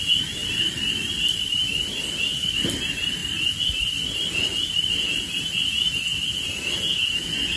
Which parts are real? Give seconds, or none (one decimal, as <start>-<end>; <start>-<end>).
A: 0.0-0.4; 1.8-3.2; 4.9-6.1; 6.8-7.6